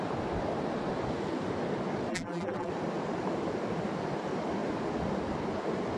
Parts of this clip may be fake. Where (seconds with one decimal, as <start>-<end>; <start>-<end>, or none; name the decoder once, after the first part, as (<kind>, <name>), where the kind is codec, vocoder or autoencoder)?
2.1-2.7 (vocoder, BigVGAN v2)